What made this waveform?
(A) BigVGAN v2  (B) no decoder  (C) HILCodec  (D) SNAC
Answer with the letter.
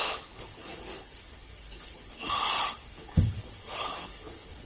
C